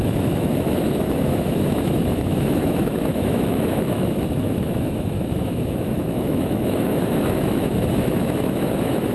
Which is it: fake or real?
fake